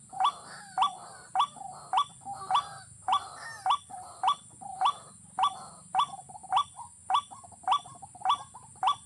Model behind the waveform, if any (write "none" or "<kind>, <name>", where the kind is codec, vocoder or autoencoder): none